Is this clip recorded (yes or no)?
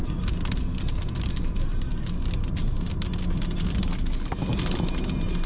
yes